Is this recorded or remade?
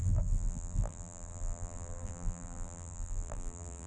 remade